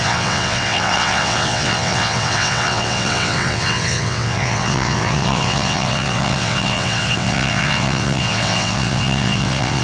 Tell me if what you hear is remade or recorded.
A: remade